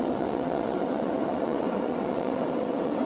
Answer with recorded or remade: remade